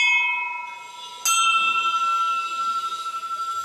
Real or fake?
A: real